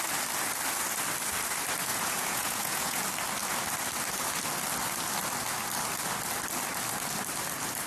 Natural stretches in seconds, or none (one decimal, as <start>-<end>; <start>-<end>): 0.0-1.9; 3.0-7.9